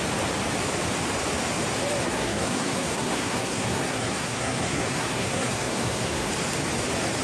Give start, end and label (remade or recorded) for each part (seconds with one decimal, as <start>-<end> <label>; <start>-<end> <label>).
0.0-2.0 recorded; 2.0-6.3 remade; 6.3-7.2 recorded

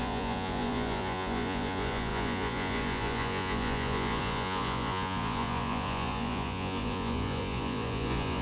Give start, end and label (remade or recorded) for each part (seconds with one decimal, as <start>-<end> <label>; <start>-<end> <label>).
0.0-8.4 remade

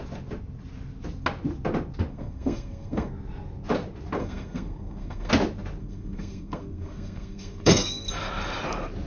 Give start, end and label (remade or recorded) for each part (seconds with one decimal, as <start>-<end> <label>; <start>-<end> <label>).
0.0-2.1 recorded; 2.1-3.1 remade; 3.1-4.2 recorded; 4.2-5.3 remade; 5.3-5.8 recorded; 5.8-8.1 remade; 8.1-9.1 recorded

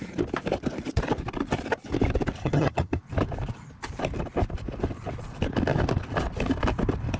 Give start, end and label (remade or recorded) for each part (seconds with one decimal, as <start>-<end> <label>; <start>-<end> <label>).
0.0-2.4 recorded; 2.4-3.0 remade; 3.0-7.2 recorded

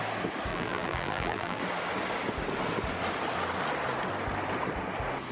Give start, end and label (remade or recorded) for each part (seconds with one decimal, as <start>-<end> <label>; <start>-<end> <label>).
0.0-0.5 recorded; 0.5-1.6 remade; 1.6-5.3 recorded

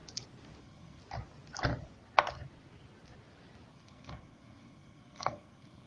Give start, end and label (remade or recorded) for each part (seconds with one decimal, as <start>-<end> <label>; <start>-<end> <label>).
0.0-0.6 recorded; 0.6-1.0 remade; 1.0-3.7 recorded; 3.7-5.9 remade